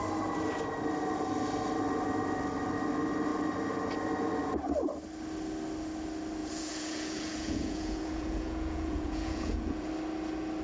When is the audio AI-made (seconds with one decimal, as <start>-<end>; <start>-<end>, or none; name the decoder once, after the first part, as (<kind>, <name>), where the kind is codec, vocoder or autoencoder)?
6.4-9.9 (vocoder, Vocos)

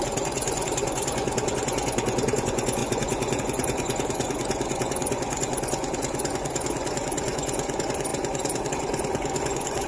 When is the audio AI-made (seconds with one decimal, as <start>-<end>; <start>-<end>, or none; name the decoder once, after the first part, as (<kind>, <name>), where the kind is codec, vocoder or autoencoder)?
0.0-9.9 (vocoder, Vocos)

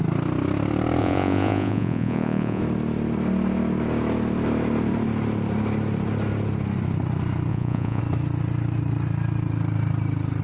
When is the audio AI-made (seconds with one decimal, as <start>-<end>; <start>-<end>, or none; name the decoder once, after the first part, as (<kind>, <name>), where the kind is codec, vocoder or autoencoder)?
1.0-2.6 (vocoder, Vocos); 7.5-8.0